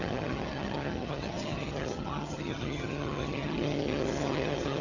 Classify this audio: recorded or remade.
remade